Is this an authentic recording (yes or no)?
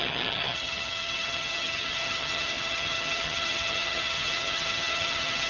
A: no